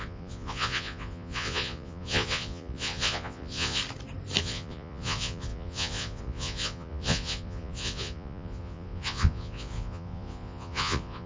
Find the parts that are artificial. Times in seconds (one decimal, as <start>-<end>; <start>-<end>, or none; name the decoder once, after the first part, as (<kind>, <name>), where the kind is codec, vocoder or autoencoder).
0.0-3.8 (vocoder, Vocos); 4.4-11.3